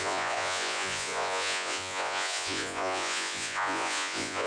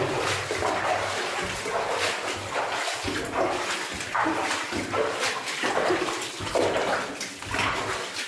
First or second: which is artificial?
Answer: first